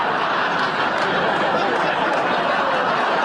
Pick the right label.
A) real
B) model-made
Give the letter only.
A